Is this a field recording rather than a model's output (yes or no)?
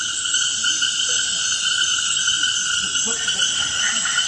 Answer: yes